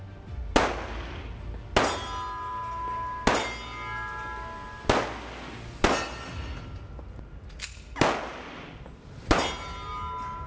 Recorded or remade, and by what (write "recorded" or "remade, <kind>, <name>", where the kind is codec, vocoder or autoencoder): recorded